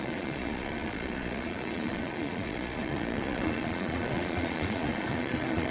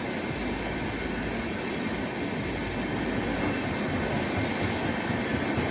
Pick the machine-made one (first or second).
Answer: first